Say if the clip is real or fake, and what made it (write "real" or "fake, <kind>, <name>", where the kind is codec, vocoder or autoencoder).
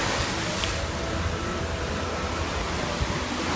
real